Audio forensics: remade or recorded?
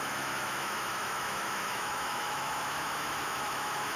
remade